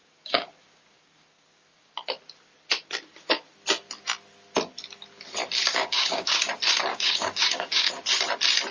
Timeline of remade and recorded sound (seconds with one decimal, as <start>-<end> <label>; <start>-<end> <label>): 0.0-1.9 remade; 1.9-5.7 recorded; 5.7-6.5 remade; 6.5-6.9 recorded; 6.9-7.9 remade; 7.9-8.7 recorded